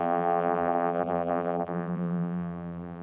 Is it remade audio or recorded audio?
remade